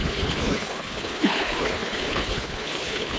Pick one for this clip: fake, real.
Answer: fake